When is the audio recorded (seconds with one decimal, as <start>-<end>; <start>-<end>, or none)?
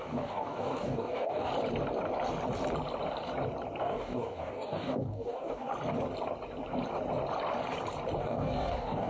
1.5-3.8; 5.7-8.2